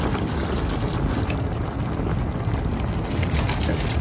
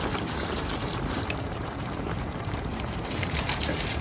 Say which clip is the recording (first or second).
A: first